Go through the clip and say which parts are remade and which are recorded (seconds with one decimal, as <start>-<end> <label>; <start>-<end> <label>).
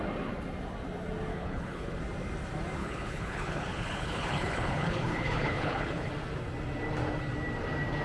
0.0-1.3 recorded; 1.3-2.0 remade; 2.0-2.8 recorded; 2.8-6.1 remade; 6.1-8.0 recorded